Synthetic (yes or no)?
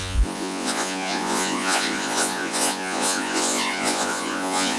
yes